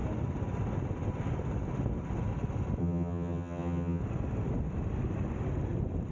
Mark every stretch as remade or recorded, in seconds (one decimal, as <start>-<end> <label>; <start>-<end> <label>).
0.0-2.8 recorded; 2.8-4.0 remade; 4.0-6.1 recorded